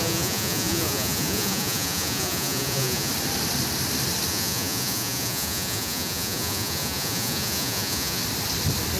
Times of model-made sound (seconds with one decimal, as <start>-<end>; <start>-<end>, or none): 0.0-3.1; 4.3-8.2